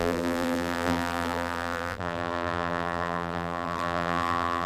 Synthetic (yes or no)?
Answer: yes